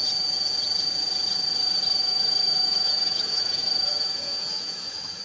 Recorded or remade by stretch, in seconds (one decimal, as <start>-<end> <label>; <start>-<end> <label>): 0.0-2.0 recorded; 2.0-5.2 remade